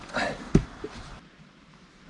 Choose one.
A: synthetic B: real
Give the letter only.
A